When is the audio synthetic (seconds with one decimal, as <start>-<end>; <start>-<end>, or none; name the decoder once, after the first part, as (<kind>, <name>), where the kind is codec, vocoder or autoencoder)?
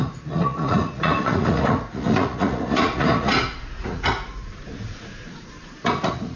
0.0-6.4 (vocoder, Vocos)